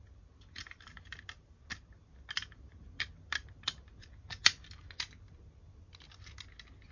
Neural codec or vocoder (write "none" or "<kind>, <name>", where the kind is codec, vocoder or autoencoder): none